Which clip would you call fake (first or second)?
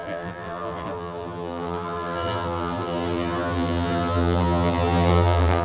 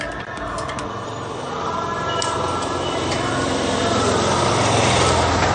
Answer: first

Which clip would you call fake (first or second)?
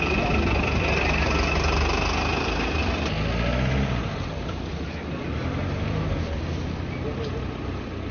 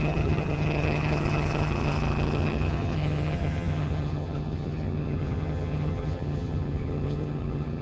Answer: second